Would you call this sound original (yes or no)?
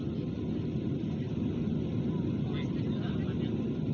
yes